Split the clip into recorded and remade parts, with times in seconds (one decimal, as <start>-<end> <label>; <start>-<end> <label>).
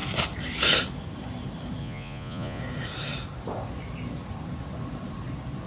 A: 0.0-1.8 recorded; 1.8-2.6 remade; 2.6-5.7 recorded